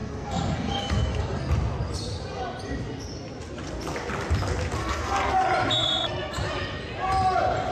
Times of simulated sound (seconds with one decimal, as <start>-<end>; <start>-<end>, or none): 0.0-1.5; 4.8-5.3